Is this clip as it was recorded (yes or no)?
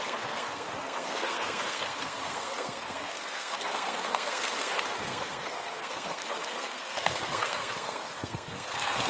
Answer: no